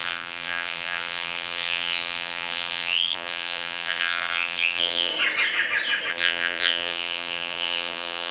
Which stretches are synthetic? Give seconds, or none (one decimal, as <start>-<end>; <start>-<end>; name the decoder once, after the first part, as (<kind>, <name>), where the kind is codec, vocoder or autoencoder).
0.0-5.1 (vocoder, BigVGAN v2); 6.1-8.3